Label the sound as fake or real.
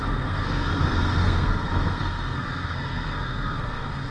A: fake